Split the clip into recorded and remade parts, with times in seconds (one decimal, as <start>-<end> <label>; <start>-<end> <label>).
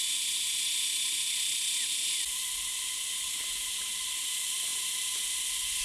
0.0-5.8 recorded